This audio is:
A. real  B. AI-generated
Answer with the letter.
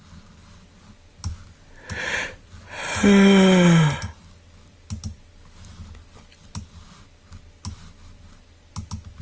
A